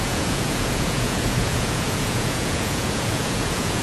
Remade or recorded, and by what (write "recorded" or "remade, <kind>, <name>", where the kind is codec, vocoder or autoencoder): remade, vocoder, Vocos